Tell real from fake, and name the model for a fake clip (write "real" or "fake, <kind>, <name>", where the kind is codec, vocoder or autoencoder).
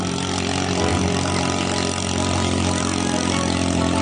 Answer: real